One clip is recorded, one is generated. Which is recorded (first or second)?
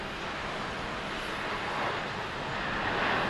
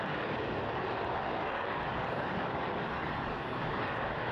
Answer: first